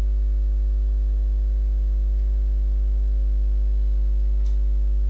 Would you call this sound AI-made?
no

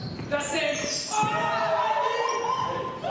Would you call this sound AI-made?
no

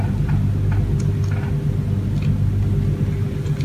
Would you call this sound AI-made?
no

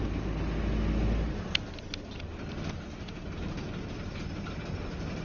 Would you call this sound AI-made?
no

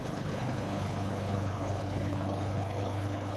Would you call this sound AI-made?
yes